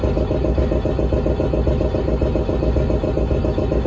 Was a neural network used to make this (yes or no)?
no